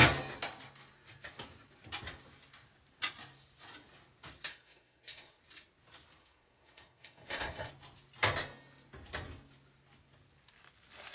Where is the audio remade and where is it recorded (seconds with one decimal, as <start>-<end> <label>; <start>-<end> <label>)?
0.0-4.5 recorded; 4.5-5.4 remade; 5.4-6.2 recorded; 6.2-7.7 remade; 7.7-11.1 recorded